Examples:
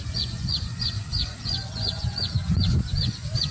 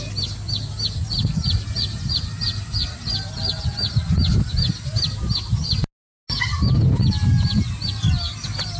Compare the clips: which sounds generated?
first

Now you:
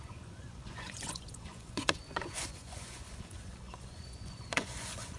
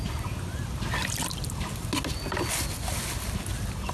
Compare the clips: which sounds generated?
first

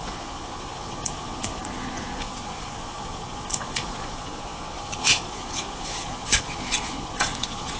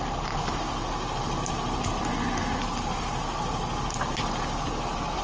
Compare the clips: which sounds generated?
first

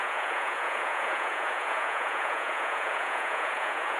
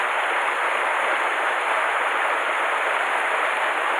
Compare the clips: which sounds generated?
first